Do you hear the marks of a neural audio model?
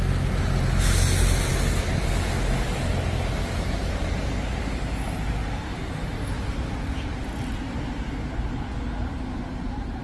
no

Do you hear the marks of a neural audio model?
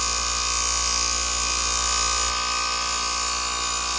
no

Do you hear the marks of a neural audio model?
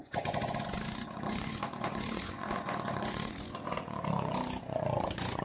yes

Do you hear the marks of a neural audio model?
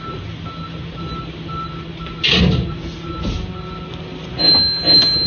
no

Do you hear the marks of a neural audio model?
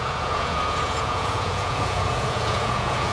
yes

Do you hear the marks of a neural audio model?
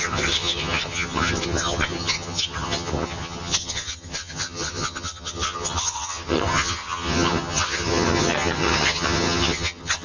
yes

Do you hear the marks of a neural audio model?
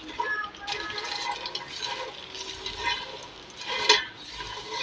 no